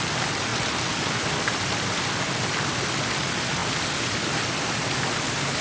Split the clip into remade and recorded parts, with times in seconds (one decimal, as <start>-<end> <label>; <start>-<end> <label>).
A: 0.0-5.6 recorded